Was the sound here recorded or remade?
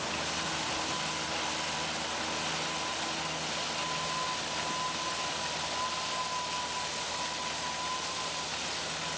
recorded